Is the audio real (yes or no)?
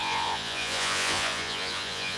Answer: no